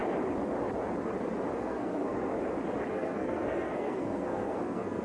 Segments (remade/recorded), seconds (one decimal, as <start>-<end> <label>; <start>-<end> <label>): 0.0-1.6 recorded; 1.6-2.3 remade; 2.3-2.9 recorded; 2.9-5.0 remade